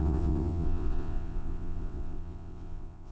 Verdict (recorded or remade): remade